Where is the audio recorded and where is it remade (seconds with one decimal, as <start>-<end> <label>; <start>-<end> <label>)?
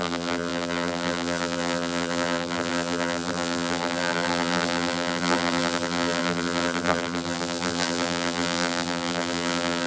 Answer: 0.0-9.9 remade